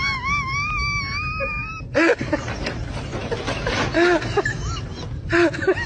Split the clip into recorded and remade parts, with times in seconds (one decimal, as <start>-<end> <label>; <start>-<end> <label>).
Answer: 0.0-5.9 recorded